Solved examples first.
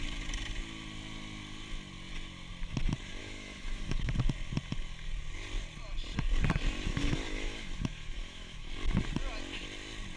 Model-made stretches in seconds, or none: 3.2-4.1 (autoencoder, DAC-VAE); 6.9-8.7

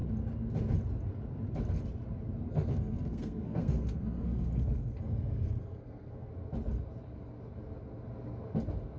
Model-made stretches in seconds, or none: 2.5-6.3 (codec, SNAC)

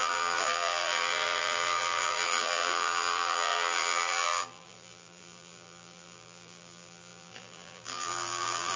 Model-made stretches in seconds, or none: 0.0-8.8 (vocoder, BigVGAN v2)

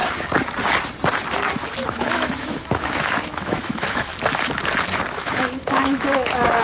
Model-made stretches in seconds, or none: 1.9-4.1 (autoencoder, DAC-VAE); 5.1-6.6